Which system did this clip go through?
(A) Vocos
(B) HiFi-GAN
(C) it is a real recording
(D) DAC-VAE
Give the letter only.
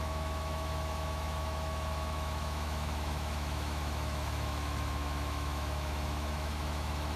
D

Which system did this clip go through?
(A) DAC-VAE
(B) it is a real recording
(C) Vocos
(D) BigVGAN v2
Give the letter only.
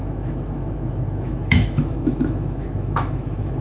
A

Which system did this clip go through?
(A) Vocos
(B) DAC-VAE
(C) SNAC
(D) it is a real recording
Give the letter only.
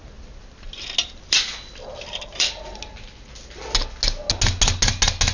D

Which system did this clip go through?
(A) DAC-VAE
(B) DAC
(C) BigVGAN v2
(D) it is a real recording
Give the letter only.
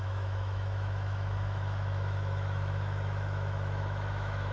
A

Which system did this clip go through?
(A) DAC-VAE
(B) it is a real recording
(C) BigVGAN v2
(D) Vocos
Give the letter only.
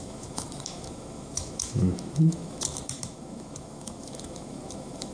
A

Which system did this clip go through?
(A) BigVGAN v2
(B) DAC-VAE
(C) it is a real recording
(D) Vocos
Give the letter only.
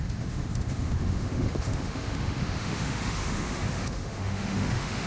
B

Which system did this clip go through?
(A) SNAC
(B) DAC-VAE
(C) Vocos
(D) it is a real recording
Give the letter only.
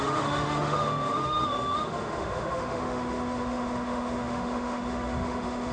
B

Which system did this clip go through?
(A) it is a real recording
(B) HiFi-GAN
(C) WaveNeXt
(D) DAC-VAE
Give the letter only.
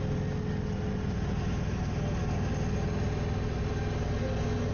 A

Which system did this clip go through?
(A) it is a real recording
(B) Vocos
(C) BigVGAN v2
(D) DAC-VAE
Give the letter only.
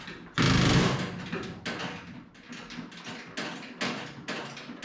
A